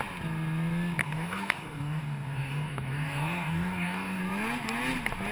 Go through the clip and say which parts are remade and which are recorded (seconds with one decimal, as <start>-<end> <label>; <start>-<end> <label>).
0.0-1.0 recorded; 1.0-4.2 remade; 4.2-5.3 recorded